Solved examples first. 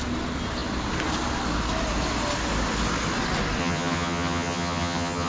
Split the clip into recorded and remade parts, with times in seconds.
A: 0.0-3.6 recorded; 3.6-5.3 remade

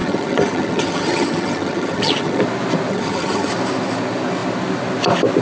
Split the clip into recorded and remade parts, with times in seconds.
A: 0.0-2.4 remade; 2.4-2.9 recorded; 2.9-3.5 remade; 3.5-5.4 recorded

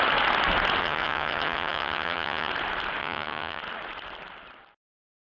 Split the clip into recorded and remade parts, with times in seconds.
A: 0.0-0.8 recorded; 0.8-2.5 remade; 2.5-3.0 recorded; 3.0-3.6 remade; 3.6-5.2 recorded